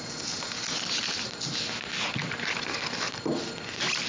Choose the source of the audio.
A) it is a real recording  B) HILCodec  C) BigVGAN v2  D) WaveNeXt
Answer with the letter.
A